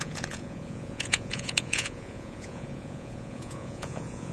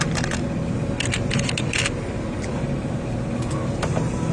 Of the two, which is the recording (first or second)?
second